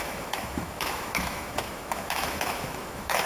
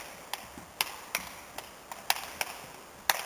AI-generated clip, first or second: first